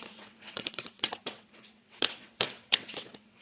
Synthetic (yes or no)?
yes